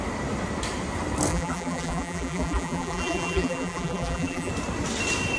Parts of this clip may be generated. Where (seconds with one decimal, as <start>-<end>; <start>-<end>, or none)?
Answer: 1.3-4.5

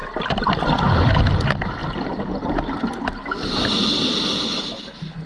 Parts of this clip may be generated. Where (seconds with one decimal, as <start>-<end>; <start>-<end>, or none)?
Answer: 0.0-1.1

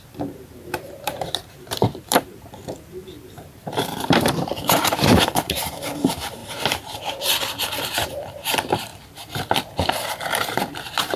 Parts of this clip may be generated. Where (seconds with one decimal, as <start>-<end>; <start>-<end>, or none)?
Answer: 0.0-8.9; 10.1-11.2

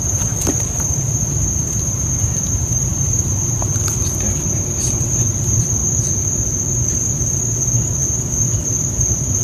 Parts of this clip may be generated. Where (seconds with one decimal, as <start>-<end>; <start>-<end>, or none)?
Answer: 0.0-5.8; 6.9-9.4

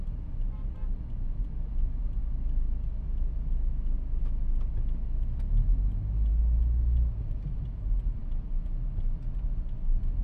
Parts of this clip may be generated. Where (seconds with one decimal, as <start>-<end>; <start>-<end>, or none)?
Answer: none

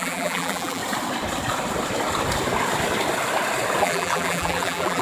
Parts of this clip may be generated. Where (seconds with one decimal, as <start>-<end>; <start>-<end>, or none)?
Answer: 0.0-0.8; 3.8-5.0